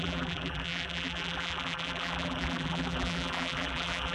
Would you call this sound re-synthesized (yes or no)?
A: yes